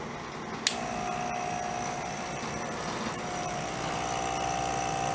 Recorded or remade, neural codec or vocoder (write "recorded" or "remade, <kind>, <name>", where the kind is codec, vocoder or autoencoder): recorded